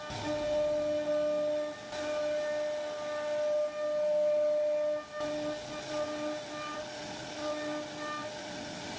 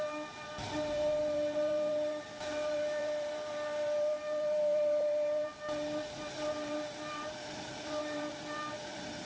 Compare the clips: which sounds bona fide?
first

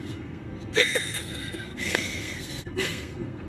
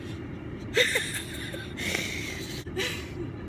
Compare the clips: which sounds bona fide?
second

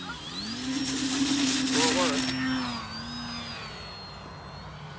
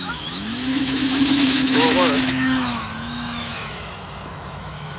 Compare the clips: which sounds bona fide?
first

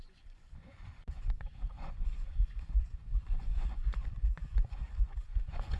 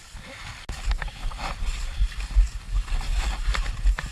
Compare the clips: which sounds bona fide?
second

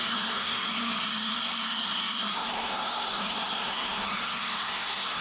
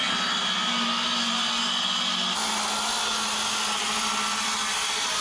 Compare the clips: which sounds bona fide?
second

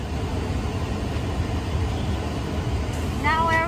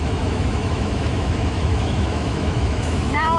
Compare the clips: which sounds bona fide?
first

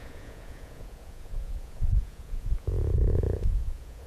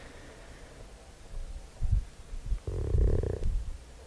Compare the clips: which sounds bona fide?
second